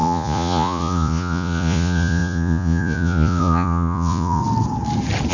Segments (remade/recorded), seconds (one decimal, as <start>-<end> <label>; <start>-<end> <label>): 0.0-4.4 remade; 4.4-5.3 recorded